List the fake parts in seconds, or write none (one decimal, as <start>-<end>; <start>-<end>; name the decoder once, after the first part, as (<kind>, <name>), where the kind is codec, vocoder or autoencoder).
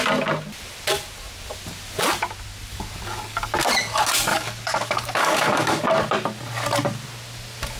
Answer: 2.7-3.7 (codec, DAC); 4.3-5.8